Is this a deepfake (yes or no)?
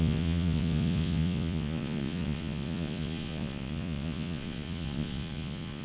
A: yes